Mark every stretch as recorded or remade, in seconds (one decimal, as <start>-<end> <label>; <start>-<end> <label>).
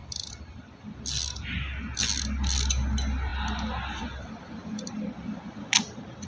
0.0-6.3 recorded